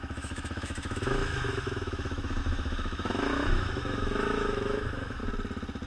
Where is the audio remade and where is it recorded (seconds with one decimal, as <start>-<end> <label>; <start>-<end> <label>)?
0.0-5.2 remade; 5.2-5.9 recorded